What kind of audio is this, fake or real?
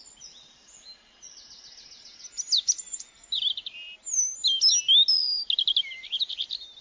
real